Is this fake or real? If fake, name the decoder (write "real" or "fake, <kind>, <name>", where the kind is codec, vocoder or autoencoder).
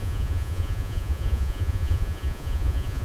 fake, vocoder, Vocos